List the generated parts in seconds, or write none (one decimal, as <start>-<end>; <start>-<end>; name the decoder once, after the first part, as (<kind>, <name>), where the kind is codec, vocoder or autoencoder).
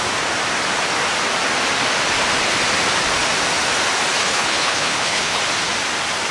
4.2-5.4 (codec, HILCodec)